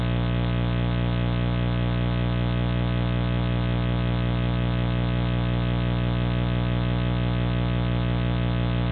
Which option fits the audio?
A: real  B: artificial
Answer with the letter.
A